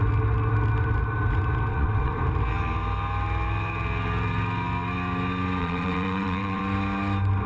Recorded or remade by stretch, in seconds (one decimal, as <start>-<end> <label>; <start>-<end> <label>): 0.0-1.7 recorded; 1.7-2.2 remade; 2.2-5.6 recorded; 5.6-6.6 remade; 6.6-7.5 recorded